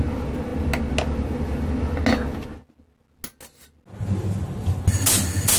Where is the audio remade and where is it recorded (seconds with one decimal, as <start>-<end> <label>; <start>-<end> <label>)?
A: 0.0-5.6 recorded